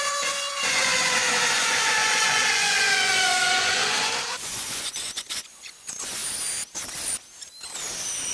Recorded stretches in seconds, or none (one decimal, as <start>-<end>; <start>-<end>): 6.2-8.3